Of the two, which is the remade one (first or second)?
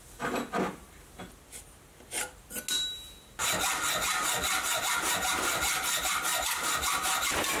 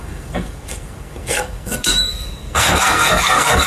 second